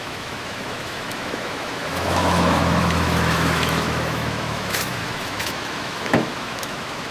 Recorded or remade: remade